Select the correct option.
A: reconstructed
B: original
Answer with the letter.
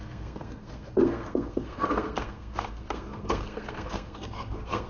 A